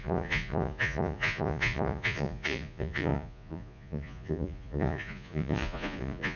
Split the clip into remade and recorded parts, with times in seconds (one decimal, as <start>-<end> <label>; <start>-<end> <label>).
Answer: 0.0-6.4 remade